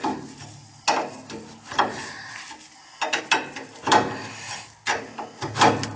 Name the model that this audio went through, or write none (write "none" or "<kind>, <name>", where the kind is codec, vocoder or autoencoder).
none